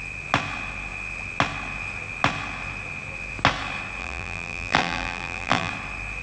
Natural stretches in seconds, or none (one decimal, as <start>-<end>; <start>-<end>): 0.0-4.0; 5.7-6.2